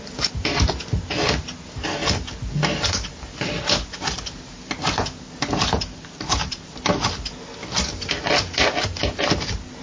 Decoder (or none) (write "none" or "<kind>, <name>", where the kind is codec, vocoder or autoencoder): none